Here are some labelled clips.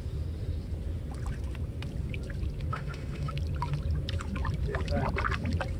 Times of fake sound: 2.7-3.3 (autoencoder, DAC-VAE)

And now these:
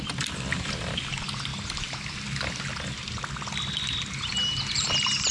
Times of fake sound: none

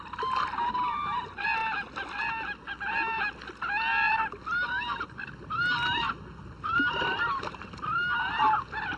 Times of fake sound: none

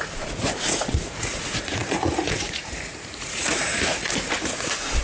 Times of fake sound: 0.0-5.0 (vocoder, Vocos)

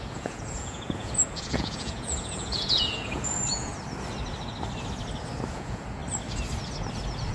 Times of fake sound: 0.0-3.7 (vocoder, Vocos); 5.5-6.0

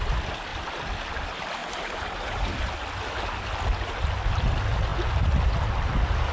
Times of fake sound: 1.6-2.5 (vocoder, BigVGAN v2)

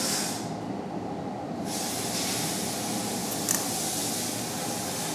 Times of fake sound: none